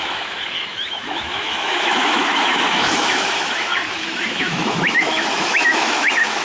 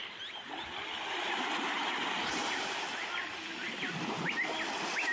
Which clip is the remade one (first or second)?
first